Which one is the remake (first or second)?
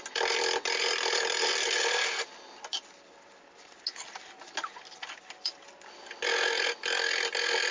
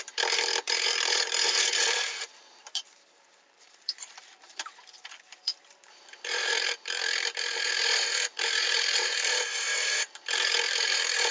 second